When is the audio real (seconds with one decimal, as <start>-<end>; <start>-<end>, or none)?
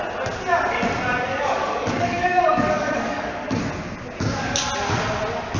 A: 0.0-1.3; 3.6-5.6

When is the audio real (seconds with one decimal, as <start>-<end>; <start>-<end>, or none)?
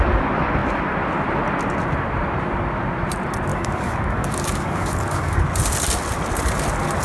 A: 0.0-3.5; 5.4-7.0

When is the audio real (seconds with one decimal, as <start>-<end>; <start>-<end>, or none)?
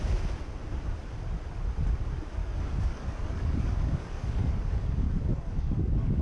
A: 0.0-2.4